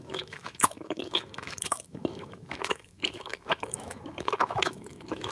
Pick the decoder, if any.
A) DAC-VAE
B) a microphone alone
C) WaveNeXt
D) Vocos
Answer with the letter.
A